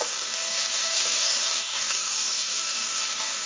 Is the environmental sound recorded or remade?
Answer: remade